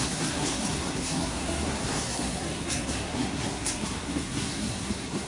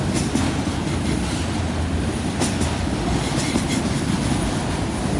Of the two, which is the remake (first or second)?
first